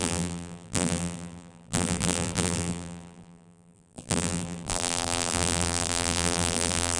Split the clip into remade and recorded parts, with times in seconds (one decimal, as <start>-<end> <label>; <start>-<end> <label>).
0.0-7.0 remade